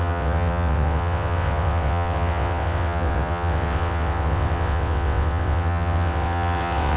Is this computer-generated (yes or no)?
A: yes